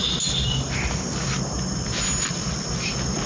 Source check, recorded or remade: recorded